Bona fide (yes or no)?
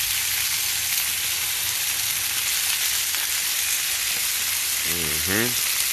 yes